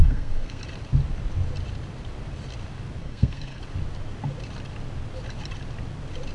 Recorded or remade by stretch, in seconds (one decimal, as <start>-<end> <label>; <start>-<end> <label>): 0.0-0.6 remade; 0.6-3.0 recorded; 3.0-3.6 remade; 3.6-6.3 recorded

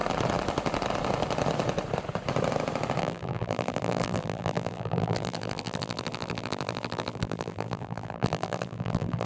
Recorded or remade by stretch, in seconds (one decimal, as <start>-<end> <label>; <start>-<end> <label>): 0.0-3.0 recorded; 3.0-9.3 remade

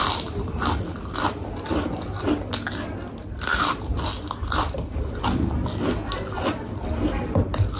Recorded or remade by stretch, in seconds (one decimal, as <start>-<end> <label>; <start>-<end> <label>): 0.0-7.8 recorded

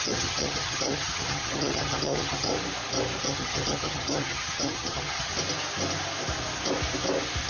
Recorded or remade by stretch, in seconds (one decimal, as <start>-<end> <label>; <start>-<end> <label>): 0.0-2.5 remade; 2.5-3.2 recorded; 3.2-5.3 remade; 5.3-7.5 recorded

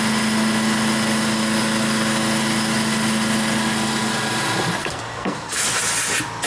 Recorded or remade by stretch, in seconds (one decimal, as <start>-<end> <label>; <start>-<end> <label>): 0.0-4.8 recorded; 4.8-5.7 remade; 5.7-6.5 recorded

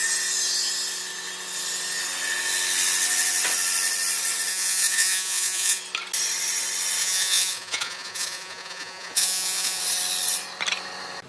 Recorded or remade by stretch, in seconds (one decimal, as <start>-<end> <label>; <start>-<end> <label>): 0.0-4.5 recorded; 4.5-5.8 remade; 5.8-7.0 recorded; 7.0-9.8 remade; 9.8-11.3 recorded